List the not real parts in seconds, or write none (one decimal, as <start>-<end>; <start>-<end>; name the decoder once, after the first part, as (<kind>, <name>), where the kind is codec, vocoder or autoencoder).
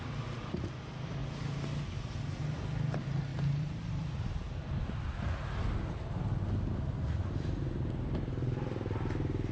3.3-4.7 (vocoder, BigVGAN v2)